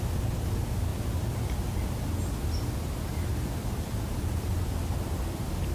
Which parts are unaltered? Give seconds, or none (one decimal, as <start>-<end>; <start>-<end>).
0.0-5.7